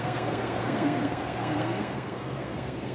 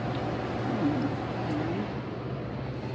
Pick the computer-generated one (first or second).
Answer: first